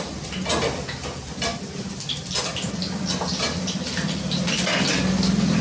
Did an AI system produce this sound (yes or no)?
no